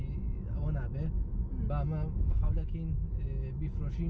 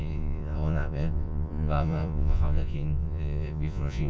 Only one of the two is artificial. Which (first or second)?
second